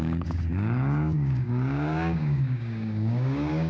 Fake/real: fake